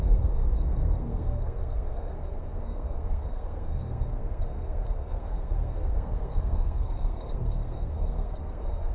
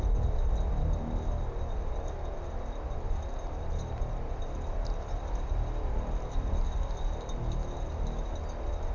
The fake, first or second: first